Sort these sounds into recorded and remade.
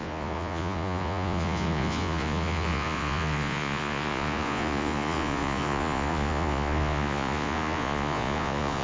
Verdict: remade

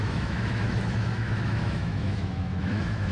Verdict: remade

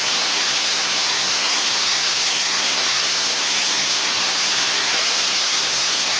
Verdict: remade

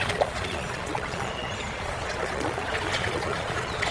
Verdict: remade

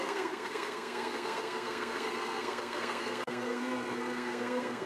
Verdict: remade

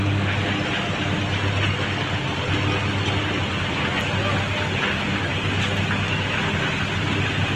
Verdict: recorded